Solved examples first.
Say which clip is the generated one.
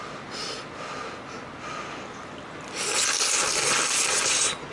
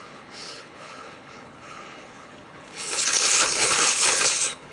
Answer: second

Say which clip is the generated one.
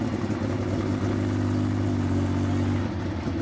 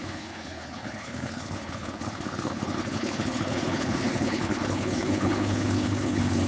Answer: second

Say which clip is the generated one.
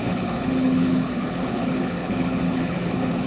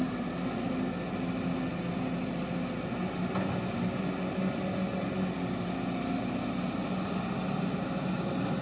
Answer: first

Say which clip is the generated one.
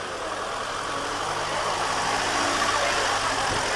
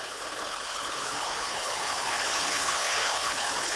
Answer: second